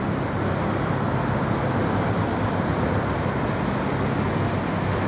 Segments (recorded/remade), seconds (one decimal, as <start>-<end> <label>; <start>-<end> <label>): 0.0-1.4 recorded; 1.4-3.7 remade; 3.7-5.1 recorded